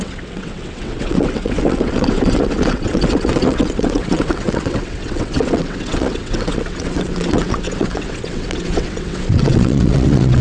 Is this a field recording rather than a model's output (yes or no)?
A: no